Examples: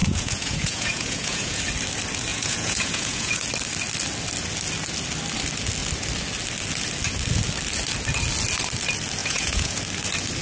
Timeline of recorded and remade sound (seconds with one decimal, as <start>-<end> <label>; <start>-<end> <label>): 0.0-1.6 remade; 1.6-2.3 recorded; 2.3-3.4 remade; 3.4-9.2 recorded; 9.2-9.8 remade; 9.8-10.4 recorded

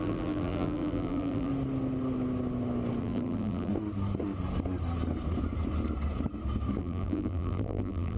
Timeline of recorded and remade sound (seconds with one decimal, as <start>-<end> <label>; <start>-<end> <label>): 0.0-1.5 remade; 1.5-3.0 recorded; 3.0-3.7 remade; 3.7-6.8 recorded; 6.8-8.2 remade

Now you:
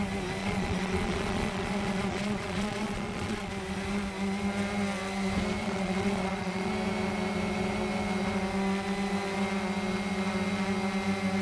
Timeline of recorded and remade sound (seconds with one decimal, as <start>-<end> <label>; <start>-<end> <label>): 0.0-0.4 recorded; 0.4-3.5 remade; 3.5-5.6 recorded; 5.6-6.7 remade; 6.7-11.4 recorded